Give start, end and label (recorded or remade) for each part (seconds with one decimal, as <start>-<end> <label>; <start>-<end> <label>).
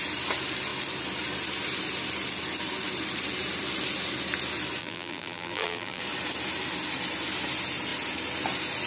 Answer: 0.0-4.8 recorded; 4.8-6.0 remade; 6.0-8.9 recorded